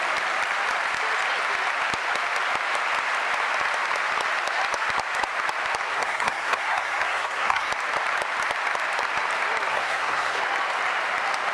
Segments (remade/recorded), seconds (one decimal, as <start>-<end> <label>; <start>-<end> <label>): 0.0-5.9 recorded; 5.9-7.7 remade; 7.7-9.7 recorded; 9.7-10.4 remade; 10.4-11.5 recorded